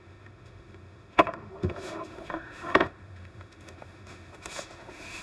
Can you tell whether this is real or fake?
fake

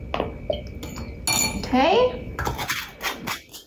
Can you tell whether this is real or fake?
real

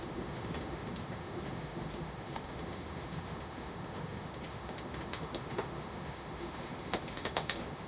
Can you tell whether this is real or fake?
fake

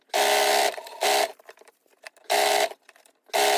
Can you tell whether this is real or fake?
real